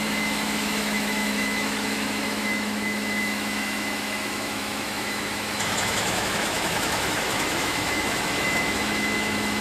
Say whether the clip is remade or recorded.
remade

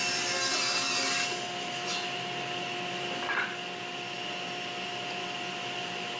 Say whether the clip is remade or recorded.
recorded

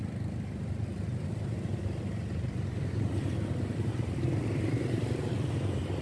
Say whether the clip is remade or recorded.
remade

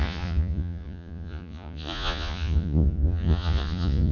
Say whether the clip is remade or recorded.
remade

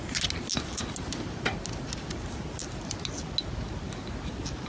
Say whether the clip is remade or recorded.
recorded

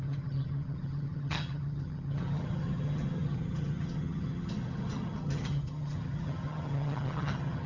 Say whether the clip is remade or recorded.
remade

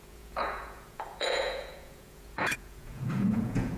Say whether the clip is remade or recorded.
remade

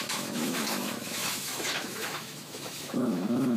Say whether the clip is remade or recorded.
remade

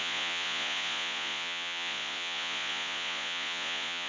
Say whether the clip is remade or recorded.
remade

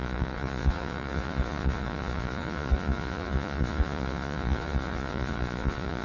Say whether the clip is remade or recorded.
remade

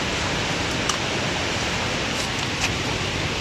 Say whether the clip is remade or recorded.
remade